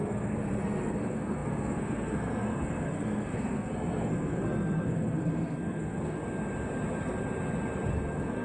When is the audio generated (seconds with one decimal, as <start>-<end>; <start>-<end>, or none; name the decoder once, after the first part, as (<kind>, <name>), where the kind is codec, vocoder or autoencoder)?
0.0-6.2 (codec, SNAC); 7.9-8.4